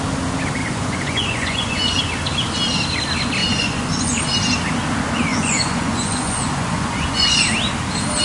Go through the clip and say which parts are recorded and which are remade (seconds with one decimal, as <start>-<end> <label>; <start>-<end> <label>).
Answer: 0.0-0.6 recorded; 0.6-2.0 remade; 2.0-3.4 recorded; 3.4-4.2 remade; 4.2-5.3 recorded; 5.3-7.4 remade; 7.4-8.2 recorded